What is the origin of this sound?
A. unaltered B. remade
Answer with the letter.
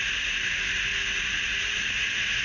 A